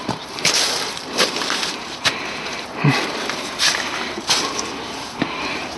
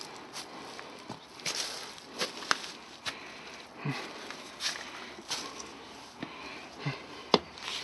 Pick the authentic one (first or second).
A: second